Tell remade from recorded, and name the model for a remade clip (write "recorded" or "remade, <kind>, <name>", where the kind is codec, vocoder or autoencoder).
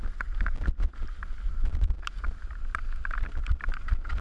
recorded